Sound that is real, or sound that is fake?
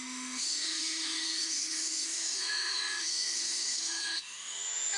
fake